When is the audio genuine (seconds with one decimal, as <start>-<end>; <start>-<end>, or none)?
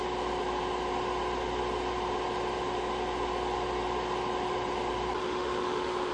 0.0-5.2